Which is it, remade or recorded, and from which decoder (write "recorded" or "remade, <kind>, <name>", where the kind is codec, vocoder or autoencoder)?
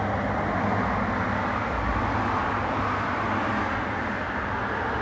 recorded